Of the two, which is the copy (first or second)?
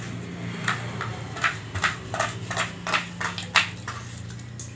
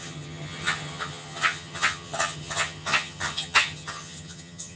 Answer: second